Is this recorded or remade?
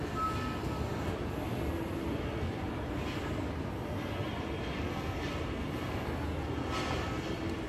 recorded